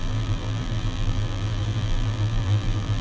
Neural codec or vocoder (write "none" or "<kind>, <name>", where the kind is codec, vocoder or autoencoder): vocoder, BigVGAN v2